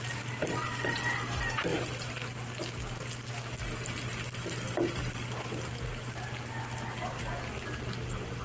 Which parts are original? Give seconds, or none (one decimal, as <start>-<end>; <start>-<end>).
0.0-8.4

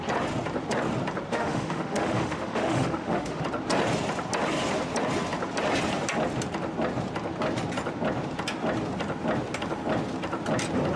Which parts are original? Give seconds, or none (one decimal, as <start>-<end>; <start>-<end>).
0.0-1.3; 3.4-11.0

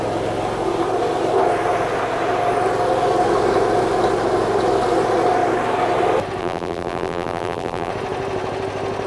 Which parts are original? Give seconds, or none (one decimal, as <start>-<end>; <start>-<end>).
0.0-6.4; 7.9-9.1

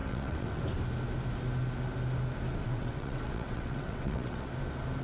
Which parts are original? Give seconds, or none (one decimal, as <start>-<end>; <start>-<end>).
0.6-2.6; 4.5-5.0

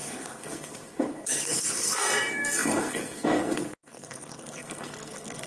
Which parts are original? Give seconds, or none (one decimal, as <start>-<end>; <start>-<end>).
none